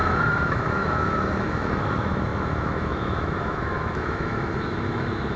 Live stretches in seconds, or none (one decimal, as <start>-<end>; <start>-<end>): none